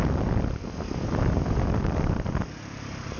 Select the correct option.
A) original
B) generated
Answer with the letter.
A